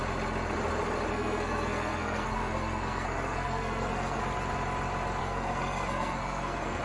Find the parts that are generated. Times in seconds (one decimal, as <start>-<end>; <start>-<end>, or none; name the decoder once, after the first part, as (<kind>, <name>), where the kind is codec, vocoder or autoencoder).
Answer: 1.1-4.2 (codec, SNAC); 5.2-6.8